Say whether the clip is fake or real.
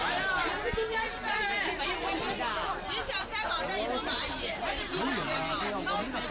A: real